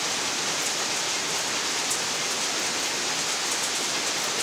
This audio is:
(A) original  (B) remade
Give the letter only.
A